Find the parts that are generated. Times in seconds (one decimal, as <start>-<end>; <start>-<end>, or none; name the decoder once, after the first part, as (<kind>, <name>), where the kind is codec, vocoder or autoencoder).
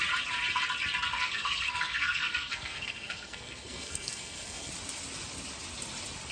1.1-4.7 (codec, SNAC)